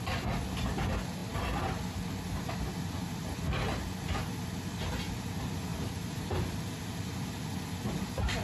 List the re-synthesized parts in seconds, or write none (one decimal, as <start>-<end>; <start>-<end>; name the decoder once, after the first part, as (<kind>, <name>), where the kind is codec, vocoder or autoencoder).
5.7-7.1 (vocoder, BigVGAN v2)